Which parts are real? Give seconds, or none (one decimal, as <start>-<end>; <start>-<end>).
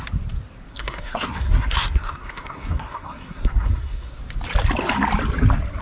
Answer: 0.0-0.7; 4.2-5.8